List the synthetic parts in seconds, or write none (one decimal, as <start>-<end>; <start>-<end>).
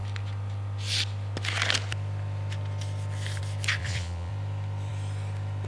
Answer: 3.8-4.3